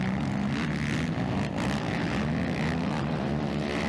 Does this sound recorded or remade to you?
recorded